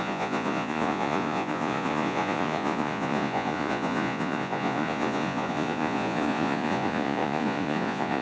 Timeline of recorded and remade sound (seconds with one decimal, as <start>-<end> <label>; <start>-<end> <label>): 0.0-8.2 remade